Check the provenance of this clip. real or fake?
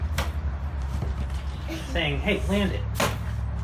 real